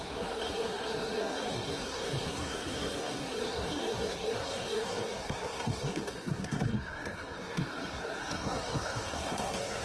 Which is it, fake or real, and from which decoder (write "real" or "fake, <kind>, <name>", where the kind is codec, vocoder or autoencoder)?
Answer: fake, codec, SNAC